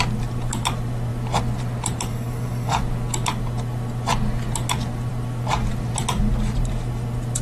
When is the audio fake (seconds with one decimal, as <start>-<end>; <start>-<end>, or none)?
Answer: 2.1-2.8